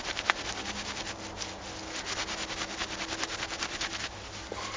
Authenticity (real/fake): real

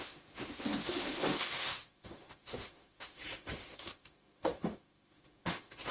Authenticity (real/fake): fake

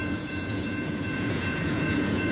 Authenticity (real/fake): fake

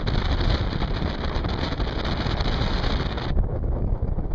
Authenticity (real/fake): real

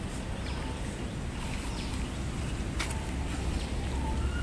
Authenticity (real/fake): real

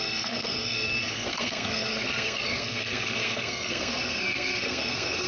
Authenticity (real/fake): fake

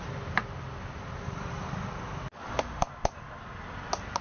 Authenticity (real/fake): real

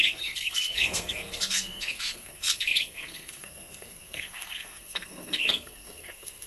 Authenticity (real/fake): fake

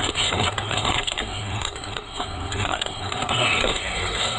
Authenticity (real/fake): fake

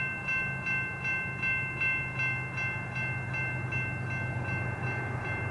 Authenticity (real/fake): real